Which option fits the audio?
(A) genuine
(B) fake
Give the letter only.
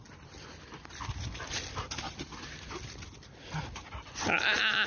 A